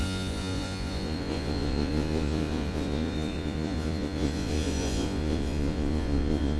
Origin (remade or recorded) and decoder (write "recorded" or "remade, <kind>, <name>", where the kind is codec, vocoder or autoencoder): remade, vocoder, Vocos